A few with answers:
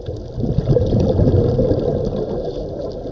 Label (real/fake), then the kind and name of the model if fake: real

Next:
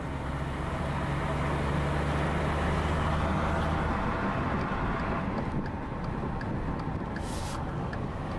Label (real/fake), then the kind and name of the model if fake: real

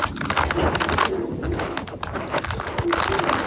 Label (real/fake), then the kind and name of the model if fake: real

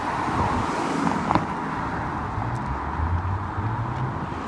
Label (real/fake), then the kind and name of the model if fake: real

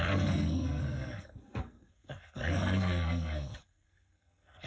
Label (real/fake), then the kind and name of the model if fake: fake, codec, SNAC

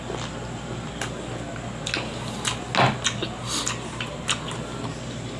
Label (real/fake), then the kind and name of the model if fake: real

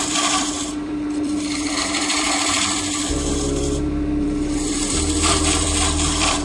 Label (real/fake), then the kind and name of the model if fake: fake, vocoder, BigVGAN v2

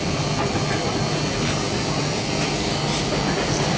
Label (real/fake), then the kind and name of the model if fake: real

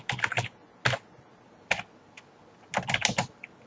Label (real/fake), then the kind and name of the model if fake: real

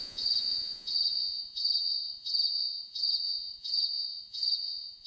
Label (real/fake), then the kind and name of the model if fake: fake, vocoder, Vocos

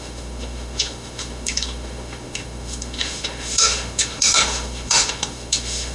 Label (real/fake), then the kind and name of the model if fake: fake, autoencoder, DAC-VAE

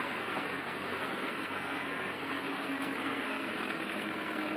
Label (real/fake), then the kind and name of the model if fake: fake, codec, SNAC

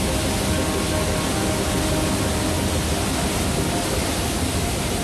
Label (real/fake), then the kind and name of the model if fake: real